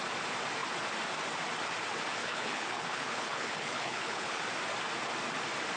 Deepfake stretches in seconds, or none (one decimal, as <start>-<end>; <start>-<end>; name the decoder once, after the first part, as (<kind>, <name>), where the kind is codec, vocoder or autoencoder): 2.2-4.4 (codec, HILCodec)